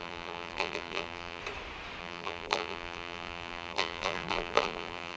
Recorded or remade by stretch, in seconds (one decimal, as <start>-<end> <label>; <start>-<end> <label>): 0.0-1.4 remade; 1.4-2.0 recorded; 2.0-5.2 remade